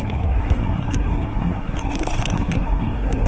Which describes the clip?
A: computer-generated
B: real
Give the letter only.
A